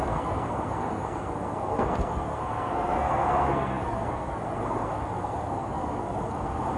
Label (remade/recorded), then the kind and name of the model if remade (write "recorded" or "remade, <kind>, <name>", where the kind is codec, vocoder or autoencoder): remade, codec, SNAC